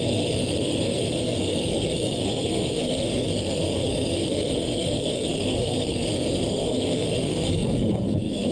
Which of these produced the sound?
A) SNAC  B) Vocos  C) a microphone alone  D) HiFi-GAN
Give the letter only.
A